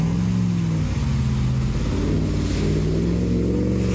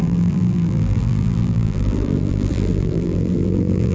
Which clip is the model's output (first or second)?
second